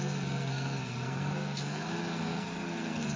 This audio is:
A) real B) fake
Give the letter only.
B